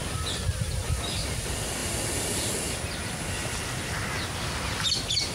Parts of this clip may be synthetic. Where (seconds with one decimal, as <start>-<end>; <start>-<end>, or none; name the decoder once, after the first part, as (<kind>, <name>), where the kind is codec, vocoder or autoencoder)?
none